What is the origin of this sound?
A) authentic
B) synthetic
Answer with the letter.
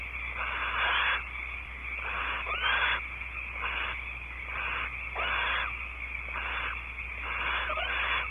A